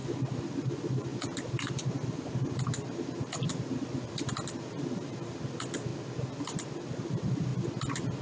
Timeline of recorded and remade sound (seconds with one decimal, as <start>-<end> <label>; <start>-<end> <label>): 0.0-5.9 remade; 5.9-6.4 recorded; 6.4-7.5 remade; 7.5-8.2 recorded